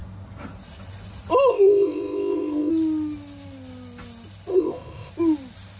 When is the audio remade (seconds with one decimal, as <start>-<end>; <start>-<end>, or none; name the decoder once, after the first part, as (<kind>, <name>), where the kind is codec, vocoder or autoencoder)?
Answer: 1.5-2.7 (codec, ZipCodec); 4.5-5.1